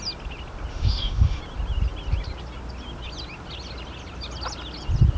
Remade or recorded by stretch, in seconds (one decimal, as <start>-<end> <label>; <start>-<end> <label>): 0.0-0.7 recorded; 0.7-1.4 remade; 1.4-5.2 recorded